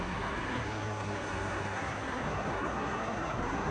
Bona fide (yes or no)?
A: no